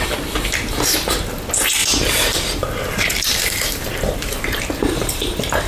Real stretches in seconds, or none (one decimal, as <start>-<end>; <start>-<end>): 0.0-1.8; 5.2-5.7